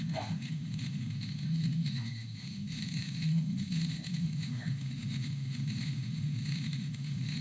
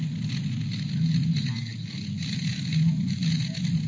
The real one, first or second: second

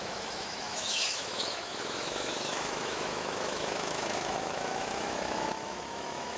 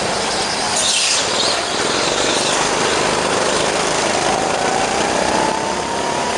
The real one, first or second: second